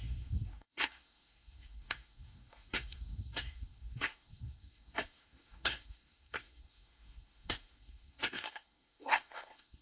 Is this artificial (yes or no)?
yes